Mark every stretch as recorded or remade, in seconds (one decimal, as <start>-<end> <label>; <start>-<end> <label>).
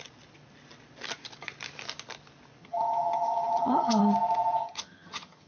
0.0-2.6 recorded; 2.6-4.0 remade; 4.0-4.6 recorded; 4.6-5.5 remade